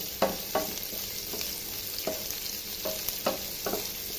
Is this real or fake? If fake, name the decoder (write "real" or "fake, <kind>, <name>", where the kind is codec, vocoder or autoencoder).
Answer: real